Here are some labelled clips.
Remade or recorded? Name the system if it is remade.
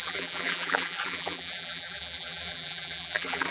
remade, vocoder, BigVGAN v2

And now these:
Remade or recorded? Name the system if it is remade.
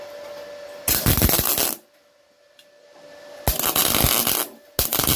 recorded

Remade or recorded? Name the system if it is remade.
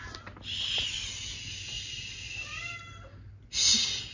recorded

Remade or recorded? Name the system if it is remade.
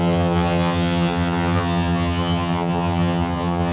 remade, vocoder, HiFi-GAN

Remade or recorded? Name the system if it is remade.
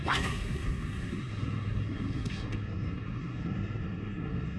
remade, codec, SNAC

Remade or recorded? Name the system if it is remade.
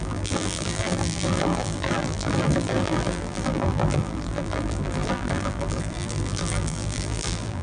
remade, vocoder, BigVGAN v2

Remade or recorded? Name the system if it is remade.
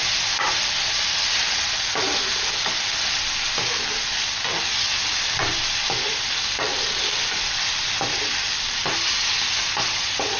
recorded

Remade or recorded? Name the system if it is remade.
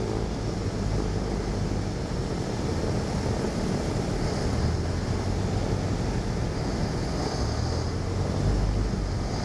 recorded